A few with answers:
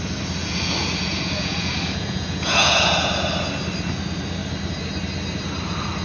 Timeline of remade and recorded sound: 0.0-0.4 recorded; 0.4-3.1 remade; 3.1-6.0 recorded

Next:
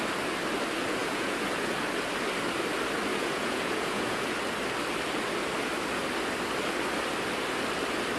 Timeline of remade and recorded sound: 0.0-1.0 recorded; 1.0-1.7 remade; 1.7-3.1 recorded; 3.1-4.3 remade; 4.3-8.2 recorded

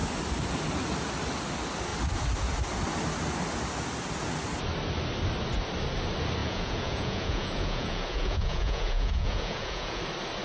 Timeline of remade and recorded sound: 0.0-6.4 recorded; 6.4-10.0 remade; 10.0-10.4 recorded

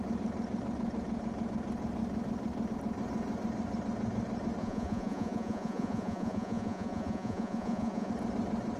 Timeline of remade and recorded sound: 0.0-4.6 recorded; 4.6-8.1 remade; 8.1-8.8 recorded

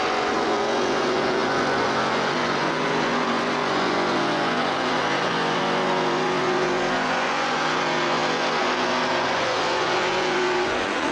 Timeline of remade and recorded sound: 0.0-11.1 remade

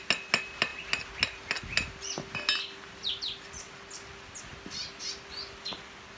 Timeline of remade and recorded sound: 0.0-6.2 recorded

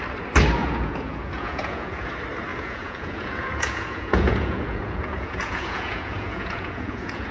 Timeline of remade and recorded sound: 0.0-0.6 recorded; 0.6-2.1 remade; 2.1-2.5 recorded; 2.5-7.3 remade